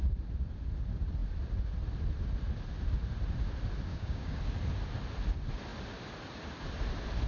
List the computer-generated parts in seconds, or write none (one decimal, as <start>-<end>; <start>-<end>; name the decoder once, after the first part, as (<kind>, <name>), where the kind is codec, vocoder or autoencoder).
3.9-4.4 (codec, DAC)